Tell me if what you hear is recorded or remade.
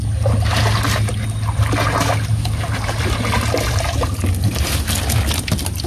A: recorded